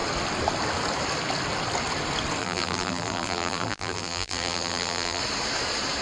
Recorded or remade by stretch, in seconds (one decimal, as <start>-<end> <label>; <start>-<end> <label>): 0.0-2.4 recorded; 2.4-5.2 remade; 5.2-6.0 recorded